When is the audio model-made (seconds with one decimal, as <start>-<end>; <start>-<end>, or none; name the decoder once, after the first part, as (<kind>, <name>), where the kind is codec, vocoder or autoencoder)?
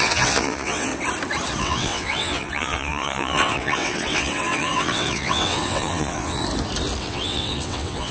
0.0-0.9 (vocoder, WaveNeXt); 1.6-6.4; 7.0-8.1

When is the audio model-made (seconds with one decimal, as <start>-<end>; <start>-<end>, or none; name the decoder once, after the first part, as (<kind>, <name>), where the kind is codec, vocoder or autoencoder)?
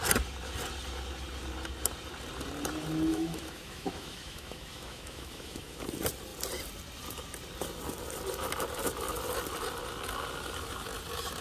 3.1-5.8 (autoencoder, DAC-VAE)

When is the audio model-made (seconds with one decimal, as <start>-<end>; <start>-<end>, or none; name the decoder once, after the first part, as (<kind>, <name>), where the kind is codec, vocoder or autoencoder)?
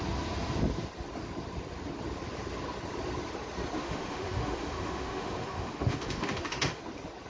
3.8-6.8 (autoencoder, DAC-VAE)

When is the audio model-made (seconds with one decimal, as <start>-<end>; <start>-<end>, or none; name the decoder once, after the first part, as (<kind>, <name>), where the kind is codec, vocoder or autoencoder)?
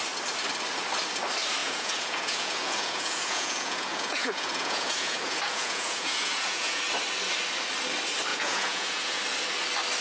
1.6-6.8 (vocoder, Vocos); 8.3-9.2